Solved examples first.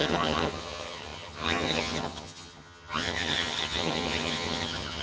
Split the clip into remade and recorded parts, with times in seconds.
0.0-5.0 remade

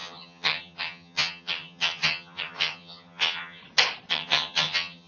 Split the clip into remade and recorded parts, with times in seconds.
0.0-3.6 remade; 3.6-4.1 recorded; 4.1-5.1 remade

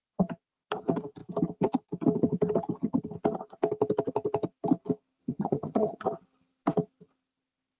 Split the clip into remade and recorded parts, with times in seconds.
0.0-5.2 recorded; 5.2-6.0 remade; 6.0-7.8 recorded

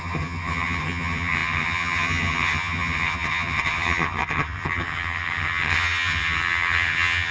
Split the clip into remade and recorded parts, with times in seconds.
0.0-7.3 remade

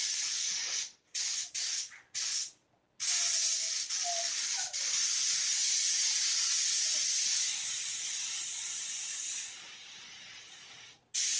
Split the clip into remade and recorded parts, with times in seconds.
0.0-11.4 recorded

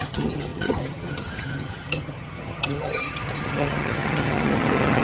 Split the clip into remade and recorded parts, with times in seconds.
0.0-5.0 remade